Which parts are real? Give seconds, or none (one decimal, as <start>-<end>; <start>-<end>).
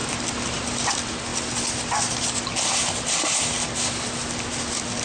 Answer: 0.0-5.0